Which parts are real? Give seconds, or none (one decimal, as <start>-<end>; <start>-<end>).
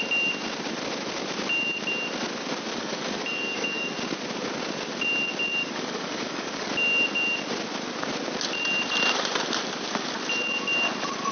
0.0-2.8; 3.9-5.6; 6.7-11.3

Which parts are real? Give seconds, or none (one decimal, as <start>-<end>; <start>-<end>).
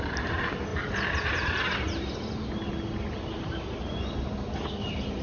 none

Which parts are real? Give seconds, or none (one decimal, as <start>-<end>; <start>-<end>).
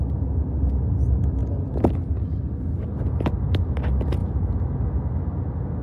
0.0-5.8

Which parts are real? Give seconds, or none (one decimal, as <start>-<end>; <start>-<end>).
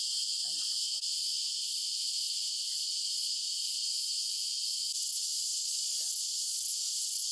0.0-5.5; 6.1-7.3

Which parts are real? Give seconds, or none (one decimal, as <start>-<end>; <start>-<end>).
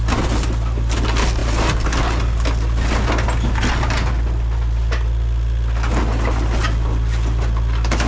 0.0-8.1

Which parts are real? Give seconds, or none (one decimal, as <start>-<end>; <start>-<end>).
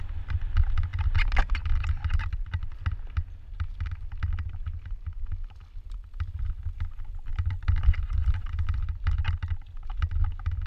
0.0-10.7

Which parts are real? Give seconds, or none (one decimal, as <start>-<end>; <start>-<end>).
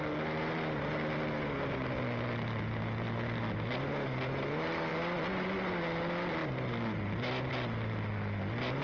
0.0-8.8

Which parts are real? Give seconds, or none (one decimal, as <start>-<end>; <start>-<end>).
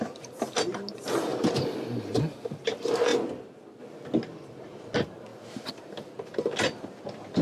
0.0-1.3; 2.2-7.4